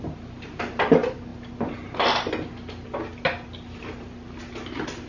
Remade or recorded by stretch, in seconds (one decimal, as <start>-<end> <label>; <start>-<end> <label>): 0.0-5.1 recorded